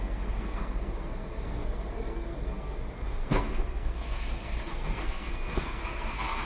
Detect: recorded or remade remade